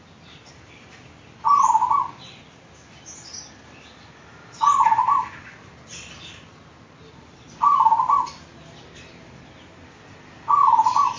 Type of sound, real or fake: real